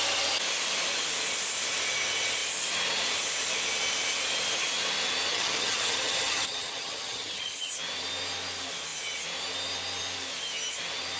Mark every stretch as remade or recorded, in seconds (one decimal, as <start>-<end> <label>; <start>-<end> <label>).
0.0-5.3 recorded; 5.3-7.7 remade; 7.7-11.2 recorded